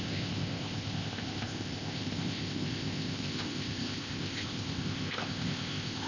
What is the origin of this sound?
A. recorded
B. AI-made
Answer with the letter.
B